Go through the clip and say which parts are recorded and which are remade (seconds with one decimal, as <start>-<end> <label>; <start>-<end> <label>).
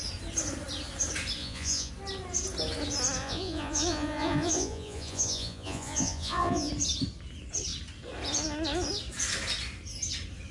0.0-1.4 recorded; 1.4-1.9 remade; 1.9-3.2 recorded; 3.2-6.7 remade; 6.7-10.5 recorded